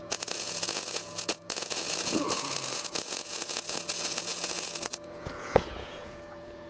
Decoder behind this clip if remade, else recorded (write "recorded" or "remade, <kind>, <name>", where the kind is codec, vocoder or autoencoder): remade, vocoder, Vocos